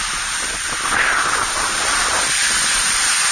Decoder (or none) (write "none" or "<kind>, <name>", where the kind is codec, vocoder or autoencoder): none